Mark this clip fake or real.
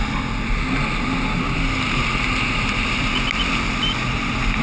real